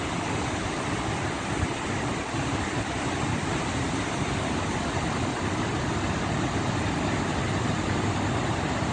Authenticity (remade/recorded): recorded